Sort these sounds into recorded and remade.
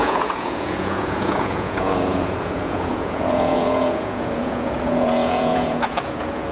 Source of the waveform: remade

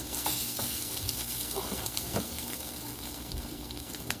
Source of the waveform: remade